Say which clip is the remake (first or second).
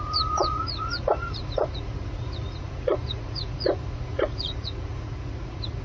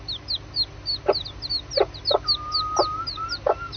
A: first